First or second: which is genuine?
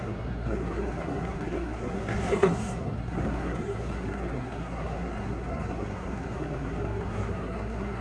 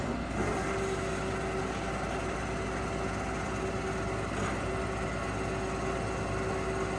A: second